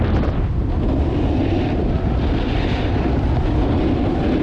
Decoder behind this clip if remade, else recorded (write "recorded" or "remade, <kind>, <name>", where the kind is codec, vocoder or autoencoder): recorded